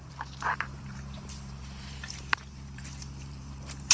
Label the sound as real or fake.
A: fake